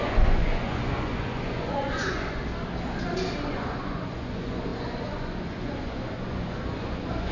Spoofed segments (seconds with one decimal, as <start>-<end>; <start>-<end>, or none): 0.0-2.4; 3.5-7.3

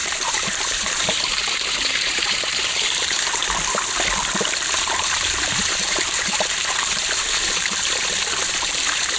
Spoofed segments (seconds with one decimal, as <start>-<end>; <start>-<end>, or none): 0.0-3.4; 4.6-8.0; 8.5-9.2

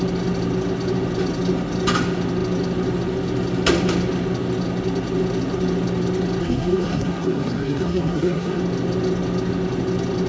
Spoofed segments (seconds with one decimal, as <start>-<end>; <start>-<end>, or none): 6.4-8.6

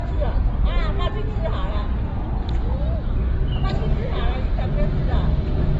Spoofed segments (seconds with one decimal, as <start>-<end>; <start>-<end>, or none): 0.0-5.8

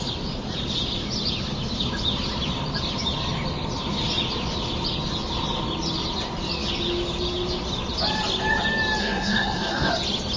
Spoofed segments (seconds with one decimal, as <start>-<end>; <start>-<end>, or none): 9.0-9.9